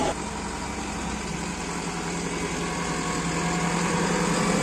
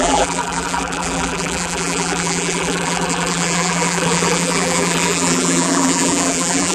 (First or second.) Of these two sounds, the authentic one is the first